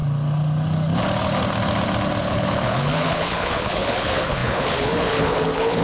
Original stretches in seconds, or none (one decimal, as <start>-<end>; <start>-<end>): 0.0-2.2